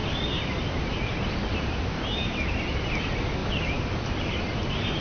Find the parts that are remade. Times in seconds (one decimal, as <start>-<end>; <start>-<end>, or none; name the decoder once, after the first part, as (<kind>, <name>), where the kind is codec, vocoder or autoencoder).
none